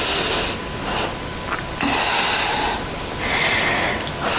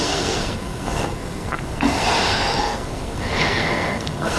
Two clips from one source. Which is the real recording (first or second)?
first